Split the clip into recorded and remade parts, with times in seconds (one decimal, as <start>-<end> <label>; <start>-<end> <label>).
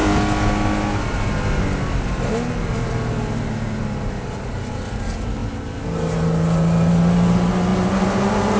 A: 0.0-8.6 recorded